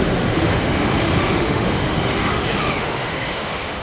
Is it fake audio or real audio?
fake